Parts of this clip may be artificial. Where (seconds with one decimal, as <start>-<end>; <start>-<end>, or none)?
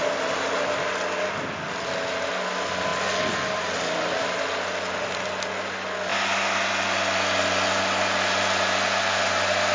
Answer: none